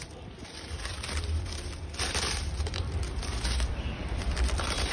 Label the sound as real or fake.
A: fake